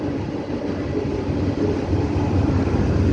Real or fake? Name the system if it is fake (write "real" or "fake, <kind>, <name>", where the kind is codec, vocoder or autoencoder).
real